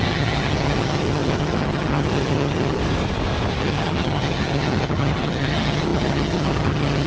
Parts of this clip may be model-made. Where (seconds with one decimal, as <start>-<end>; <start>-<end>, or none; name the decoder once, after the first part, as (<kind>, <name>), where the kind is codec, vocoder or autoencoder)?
0.0-2.8 (vocoder, HiFi-GAN); 3.6-7.1